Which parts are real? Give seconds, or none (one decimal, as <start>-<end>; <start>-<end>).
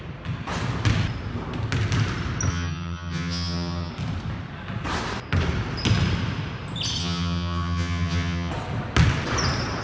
0.0-2.5; 3.9-7.0; 8.5-9.8